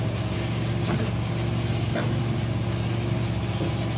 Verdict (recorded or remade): recorded